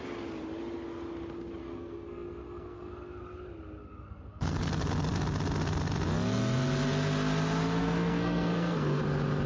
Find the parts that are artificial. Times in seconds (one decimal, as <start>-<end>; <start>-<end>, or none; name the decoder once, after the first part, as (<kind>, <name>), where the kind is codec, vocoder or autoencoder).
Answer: 1.6-3.2 (codec, SNAC); 3.8-4.7; 7.8-9.0